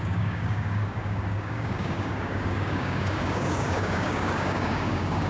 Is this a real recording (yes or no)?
no